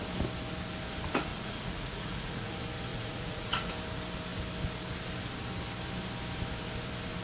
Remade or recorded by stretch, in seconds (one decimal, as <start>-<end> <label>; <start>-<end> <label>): 0.0-1.3 recorded; 1.3-2.5 remade; 2.5-2.9 recorded; 2.9-3.7 remade; 3.7-7.2 recorded